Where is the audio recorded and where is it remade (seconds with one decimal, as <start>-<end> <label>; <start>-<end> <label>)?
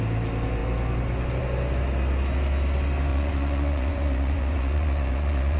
0.0-3.1 recorded; 3.1-5.6 remade